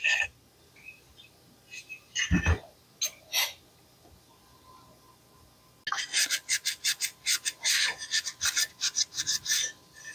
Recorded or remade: recorded